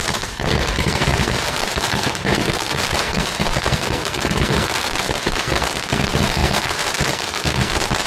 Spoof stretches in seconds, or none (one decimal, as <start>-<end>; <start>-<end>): 0.0-8.1